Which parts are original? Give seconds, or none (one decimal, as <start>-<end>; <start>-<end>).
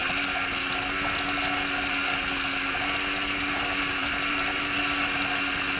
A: 0.0-4.0; 4.5-5.8